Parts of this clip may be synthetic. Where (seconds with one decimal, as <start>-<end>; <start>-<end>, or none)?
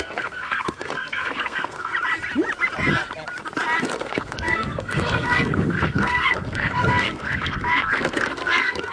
0.0-1.9; 3.8-8.9